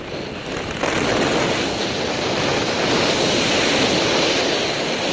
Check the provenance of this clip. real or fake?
real